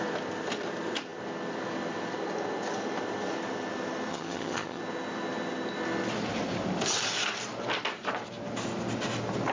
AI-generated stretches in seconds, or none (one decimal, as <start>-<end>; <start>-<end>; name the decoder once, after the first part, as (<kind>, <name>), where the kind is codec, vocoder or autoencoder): 4.1-4.8 (vocoder, HiFi-GAN)